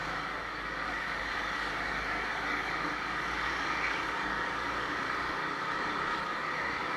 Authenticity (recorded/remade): remade